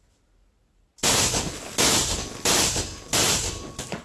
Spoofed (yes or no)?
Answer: no